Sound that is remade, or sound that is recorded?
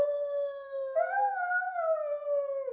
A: recorded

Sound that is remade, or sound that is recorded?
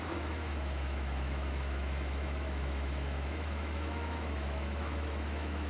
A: remade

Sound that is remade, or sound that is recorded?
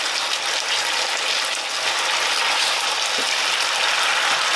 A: recorded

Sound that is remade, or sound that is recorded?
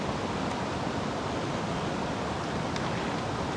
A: recorded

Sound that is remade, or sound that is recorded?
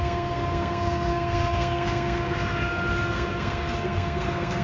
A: remade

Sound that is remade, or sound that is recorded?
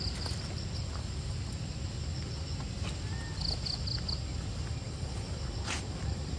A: recorded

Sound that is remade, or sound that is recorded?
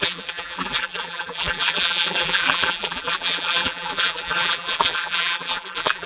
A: remade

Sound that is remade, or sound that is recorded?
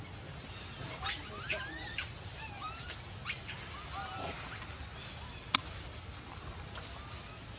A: recorded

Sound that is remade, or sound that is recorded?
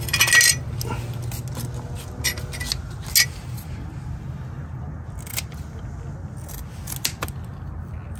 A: recorded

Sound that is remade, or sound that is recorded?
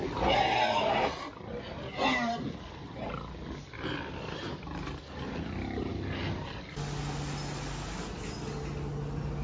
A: recorded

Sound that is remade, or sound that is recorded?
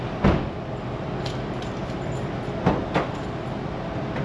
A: recorded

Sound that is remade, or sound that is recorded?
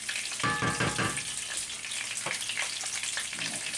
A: recorded